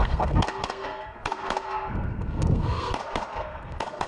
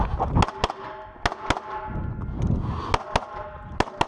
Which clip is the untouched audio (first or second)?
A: second